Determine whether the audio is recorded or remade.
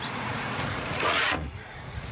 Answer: remade